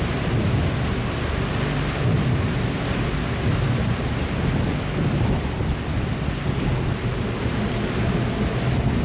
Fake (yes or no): no